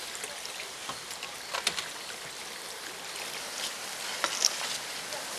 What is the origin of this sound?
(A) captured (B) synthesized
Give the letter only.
A